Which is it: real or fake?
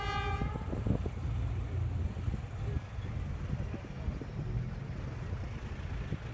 real